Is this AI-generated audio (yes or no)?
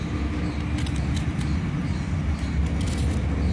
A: no